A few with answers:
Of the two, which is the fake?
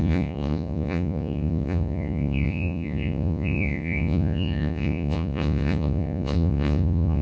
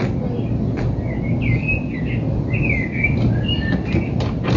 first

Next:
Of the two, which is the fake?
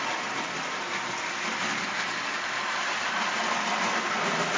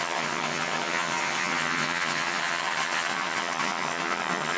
second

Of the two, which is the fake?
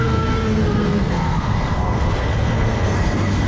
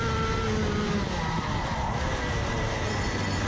first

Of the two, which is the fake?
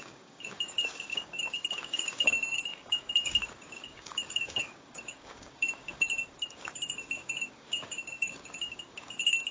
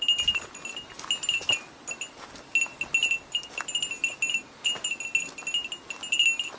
first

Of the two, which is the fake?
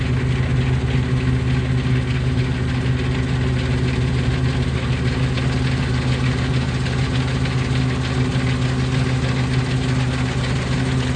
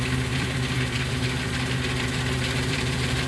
second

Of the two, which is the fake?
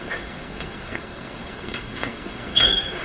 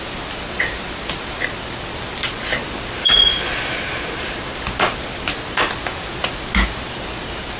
first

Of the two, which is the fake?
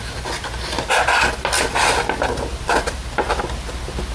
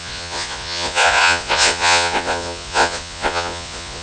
second